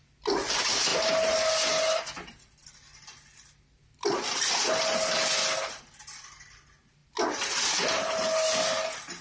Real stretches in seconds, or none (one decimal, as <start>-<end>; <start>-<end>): 0.0-9.2